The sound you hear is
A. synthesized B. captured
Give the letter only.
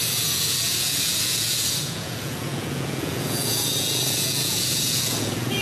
A